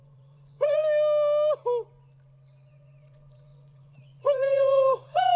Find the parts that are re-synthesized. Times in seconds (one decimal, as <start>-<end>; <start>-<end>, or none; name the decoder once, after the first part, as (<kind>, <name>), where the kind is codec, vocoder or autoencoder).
0.0-0.8 (vocoder, Vocos); 2.7-5.4